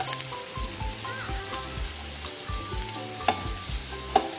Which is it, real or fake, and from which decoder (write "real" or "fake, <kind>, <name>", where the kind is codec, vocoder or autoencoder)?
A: real